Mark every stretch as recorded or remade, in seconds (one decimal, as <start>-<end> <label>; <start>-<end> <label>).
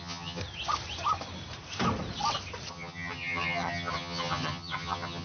0.0-0.4 remade; 0.4-2.7 recorded; 2.7-5.2 remade